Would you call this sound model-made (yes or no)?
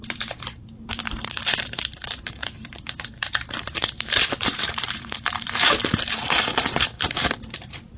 yes